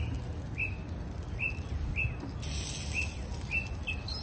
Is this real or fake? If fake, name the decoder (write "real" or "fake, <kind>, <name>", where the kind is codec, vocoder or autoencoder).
real